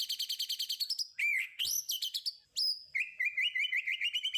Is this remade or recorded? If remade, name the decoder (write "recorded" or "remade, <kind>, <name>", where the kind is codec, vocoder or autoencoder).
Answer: recorded